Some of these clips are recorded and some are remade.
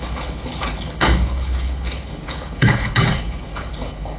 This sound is remade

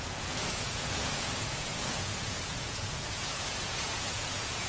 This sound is remade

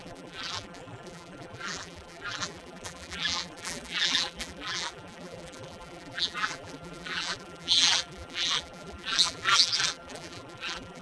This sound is remade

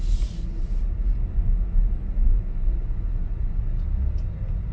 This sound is recorded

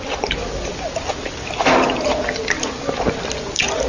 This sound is recorded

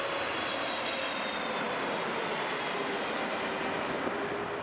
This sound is recorded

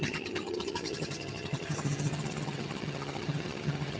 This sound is remade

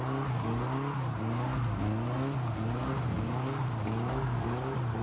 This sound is recorded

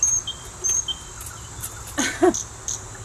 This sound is recorded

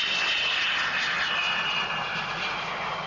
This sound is recorded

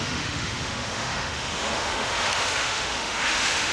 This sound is remade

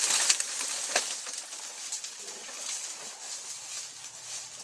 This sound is recorded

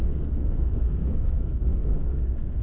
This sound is remade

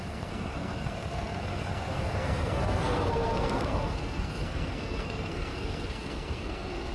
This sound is remade